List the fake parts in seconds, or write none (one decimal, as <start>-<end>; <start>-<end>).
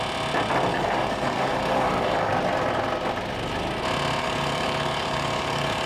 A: 0.7-2.3; 4.2-5.9